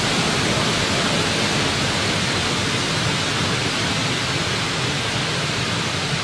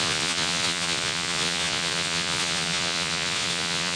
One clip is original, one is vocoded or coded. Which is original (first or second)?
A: first